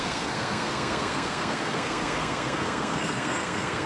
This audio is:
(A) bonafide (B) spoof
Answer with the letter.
B